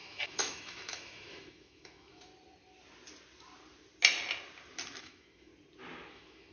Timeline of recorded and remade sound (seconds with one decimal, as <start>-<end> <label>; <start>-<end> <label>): 0.0-2.3 remade; 2.3-5.0 recorded; 5.0-5.5 remade; 5.5-6.1 recorded; 6.1-6.5 remade